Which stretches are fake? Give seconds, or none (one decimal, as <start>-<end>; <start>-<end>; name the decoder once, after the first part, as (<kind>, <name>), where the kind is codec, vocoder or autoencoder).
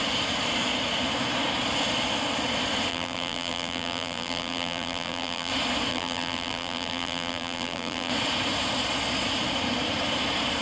2.9-5.5 (vocoder, BigVGAN v2); 5.9-8.1